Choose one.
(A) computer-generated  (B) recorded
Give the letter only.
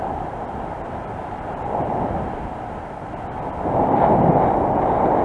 B